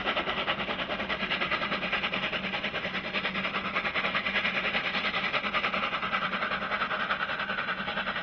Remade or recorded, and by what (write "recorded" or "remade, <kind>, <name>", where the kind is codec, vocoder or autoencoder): recorded